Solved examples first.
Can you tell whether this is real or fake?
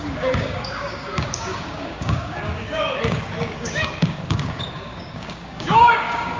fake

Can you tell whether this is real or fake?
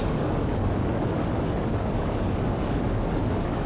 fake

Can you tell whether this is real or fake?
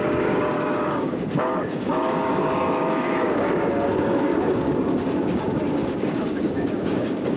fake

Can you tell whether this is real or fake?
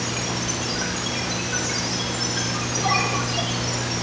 real